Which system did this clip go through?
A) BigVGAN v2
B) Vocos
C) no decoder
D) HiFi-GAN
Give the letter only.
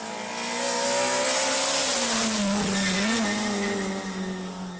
C